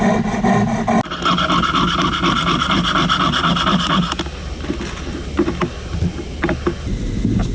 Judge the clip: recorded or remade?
recorded